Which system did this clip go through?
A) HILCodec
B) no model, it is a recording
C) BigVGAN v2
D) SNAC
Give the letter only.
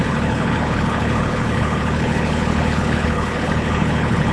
A